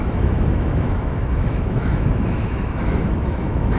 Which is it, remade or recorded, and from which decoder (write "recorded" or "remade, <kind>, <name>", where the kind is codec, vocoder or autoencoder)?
remade, autoencoder, DAC-VAE